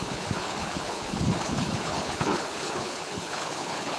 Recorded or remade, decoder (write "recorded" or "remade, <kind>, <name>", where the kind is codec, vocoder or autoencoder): remade, codec, HILCodec